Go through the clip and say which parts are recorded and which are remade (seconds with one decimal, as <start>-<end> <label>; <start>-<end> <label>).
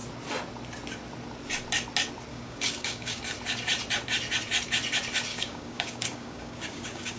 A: 0.0-2.3 recorded; 2.3-3.2 remade; 3.2-5.3 recorded; 5.3-7.2 remade